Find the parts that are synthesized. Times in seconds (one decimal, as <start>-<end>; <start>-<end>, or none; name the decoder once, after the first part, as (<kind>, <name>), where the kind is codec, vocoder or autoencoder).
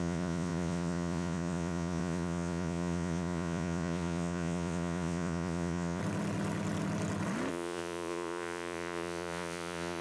0.0-6.0 (vocoder, Vocos); 7.5-10.0